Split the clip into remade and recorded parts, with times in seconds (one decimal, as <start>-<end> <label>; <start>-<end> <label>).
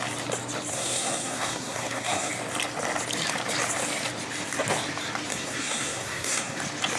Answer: 0.0-0.7 recorded; 0.7-2.3 remade; 2.3-5.3 recorded; 5.3-6.6 remade; 6.6-7.0 recorded